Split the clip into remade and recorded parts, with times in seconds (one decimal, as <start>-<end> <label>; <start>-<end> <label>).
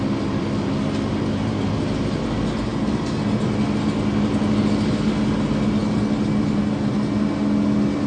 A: 0.0-8.1 recorded